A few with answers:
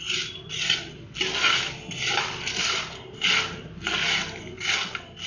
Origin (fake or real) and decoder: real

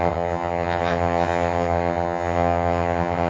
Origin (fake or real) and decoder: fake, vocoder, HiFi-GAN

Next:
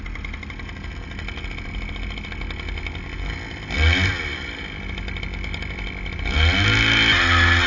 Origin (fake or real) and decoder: real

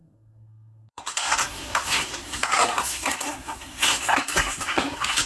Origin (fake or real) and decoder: fake, codec, SNAC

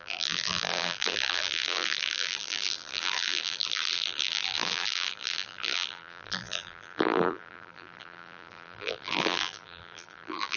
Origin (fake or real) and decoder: fake, vocoder, BigVGAN v2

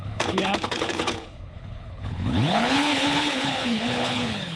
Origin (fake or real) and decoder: fake, codec, HILCodec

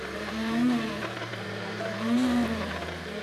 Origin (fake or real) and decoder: fake, vocoder, BigVGAN v2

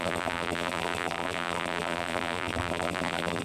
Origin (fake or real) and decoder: fake, vocoder, BigVGAN v2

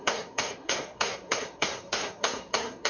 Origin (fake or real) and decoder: fake, codec, SNAC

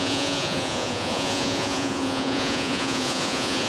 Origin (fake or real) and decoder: fake, vocoder, Vocos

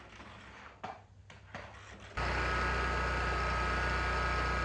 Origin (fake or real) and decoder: real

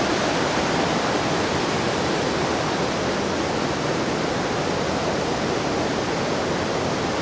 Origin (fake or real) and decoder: real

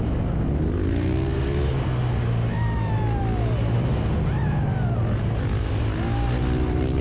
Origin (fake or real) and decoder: real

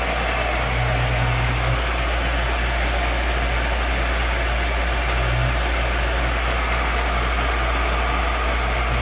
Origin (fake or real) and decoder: real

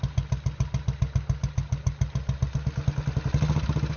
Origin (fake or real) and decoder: real